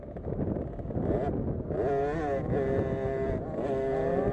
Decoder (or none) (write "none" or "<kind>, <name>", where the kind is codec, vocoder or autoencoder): none